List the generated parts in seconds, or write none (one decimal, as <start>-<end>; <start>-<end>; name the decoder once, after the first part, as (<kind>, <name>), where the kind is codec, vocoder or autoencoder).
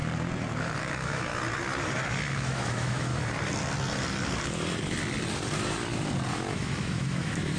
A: 0.8-1.3 (autoencoder, DAC-VAE); 2.3-3.1; 6.3-7.6